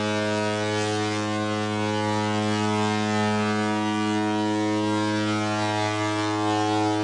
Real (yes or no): yes